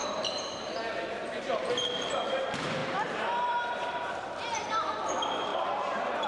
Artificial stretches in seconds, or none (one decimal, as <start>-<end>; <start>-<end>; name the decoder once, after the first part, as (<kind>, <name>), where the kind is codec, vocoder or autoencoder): 0.0-1.7 (vocoder, BigVGAN v2); 2.8-4.1; 5.5-6.3